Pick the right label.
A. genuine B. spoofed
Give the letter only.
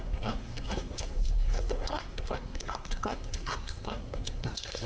B